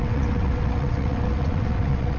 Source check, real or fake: fake